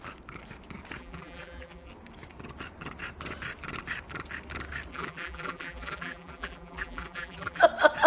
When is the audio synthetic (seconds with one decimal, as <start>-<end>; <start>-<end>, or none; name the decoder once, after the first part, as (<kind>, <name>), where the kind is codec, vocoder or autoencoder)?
1.0-1.9 (vocoder, BigVGAN v2); 4.9-7.6

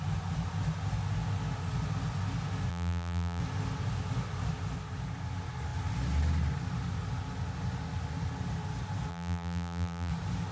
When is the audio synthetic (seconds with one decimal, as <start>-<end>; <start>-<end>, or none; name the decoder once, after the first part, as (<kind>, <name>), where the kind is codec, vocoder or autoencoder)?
2.7-3.4 (vocoder, BigVGAN v2); 9.1-10.1

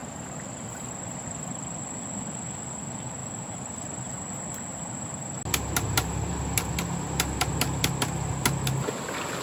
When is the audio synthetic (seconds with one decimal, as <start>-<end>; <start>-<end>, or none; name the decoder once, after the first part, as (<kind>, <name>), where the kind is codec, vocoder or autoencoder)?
0.0-0.9 (vocoder, BigVGAN v2)

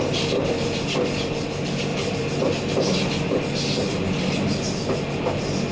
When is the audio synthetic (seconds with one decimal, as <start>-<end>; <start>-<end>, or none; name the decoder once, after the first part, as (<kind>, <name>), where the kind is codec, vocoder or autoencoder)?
1.9-2.4 (vocoder, BigVGAN v2)